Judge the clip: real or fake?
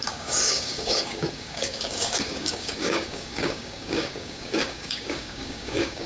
fake